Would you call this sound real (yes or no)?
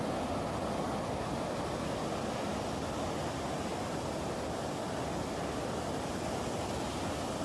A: yes